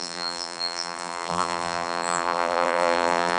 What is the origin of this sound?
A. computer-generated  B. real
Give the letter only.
A